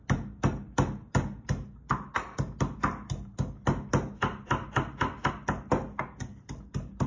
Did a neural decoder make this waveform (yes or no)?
no